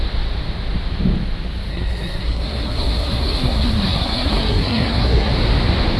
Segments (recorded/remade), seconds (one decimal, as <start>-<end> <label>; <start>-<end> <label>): 0.0-1.7 recorded; 1.7-5.3 remade; 5.3-6.0 recorded